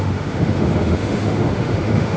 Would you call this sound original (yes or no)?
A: no